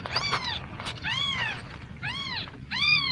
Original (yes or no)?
no